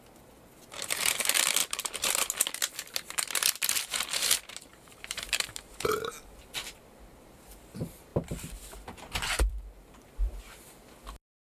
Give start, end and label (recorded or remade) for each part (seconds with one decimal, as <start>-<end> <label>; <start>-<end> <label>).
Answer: 0.0-1.6 recorded; 1.6-2.3 remade; 2.3-4.7 recorded; 4.7-5.7 remade; 5.7-8.1 recorded; 8.1-10.4 remade; 10.4-11.4 recorded